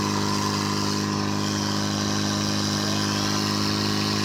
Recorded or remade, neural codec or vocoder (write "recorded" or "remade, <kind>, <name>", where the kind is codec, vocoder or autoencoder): recorded